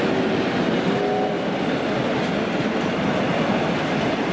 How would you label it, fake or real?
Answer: real